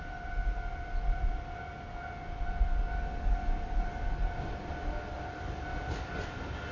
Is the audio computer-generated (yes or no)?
no